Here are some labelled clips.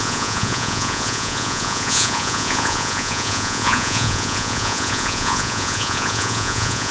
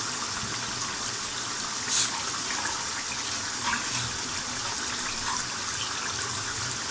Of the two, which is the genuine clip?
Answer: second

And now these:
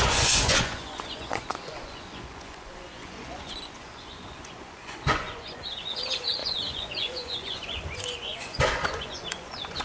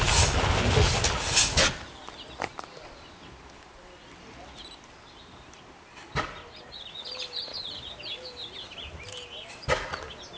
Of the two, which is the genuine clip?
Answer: second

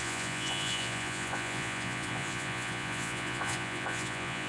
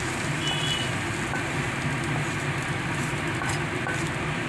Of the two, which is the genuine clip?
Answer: second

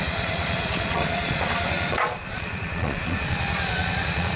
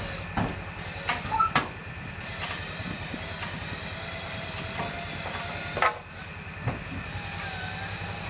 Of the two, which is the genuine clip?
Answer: second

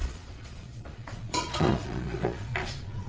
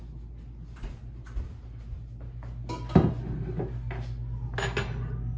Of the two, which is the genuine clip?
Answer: second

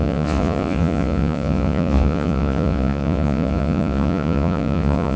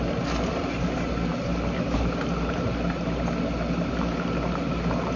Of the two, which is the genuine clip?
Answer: second